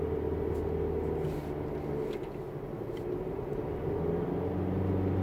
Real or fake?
real